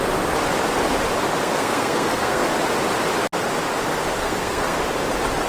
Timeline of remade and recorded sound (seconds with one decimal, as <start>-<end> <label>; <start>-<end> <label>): 0.0-1.4 recorded; 1.4-2.5 remade; 2.5-4.2 recorded; 4.2-4.8 remade; 4.8-5.5 recorded

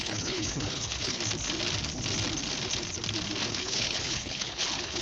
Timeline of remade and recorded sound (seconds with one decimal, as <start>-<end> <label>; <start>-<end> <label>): 0.0-1.2 remade; 1.2-3.5 recorded; 3.5-5.0 remade